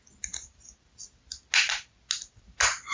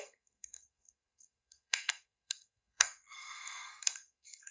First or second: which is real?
first